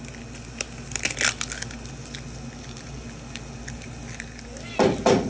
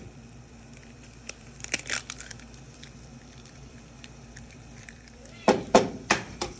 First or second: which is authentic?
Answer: first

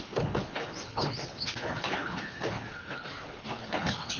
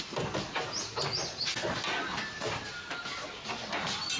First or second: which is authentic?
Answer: second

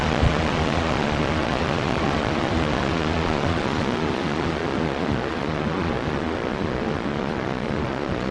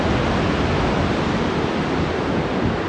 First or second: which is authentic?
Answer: second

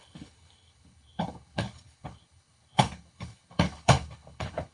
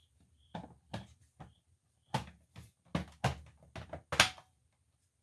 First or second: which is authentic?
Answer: second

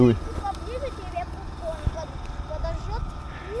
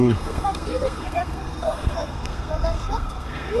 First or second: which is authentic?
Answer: first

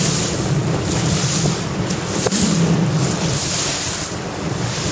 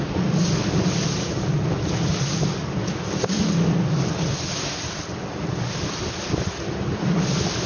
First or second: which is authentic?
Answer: second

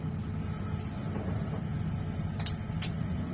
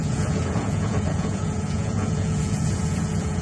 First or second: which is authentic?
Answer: first